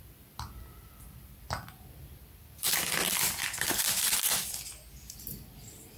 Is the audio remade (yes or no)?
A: yes